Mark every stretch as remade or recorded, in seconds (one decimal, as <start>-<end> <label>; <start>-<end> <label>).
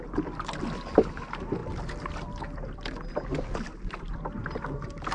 0.0-5.1 recorded